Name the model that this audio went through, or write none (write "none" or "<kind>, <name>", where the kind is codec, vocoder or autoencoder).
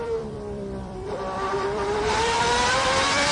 vocoder, BigVGAN v2